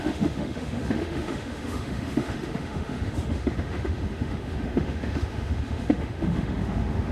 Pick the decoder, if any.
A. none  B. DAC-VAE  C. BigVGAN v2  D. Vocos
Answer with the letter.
B